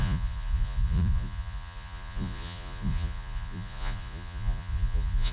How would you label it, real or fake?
fake